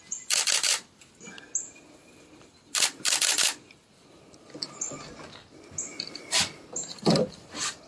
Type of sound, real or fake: real